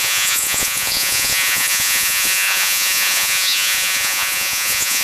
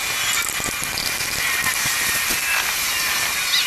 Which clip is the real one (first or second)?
second